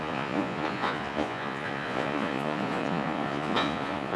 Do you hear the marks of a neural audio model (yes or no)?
yes